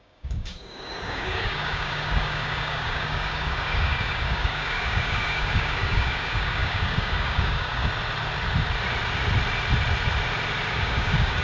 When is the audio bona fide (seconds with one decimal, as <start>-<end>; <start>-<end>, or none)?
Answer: 7.9-10.7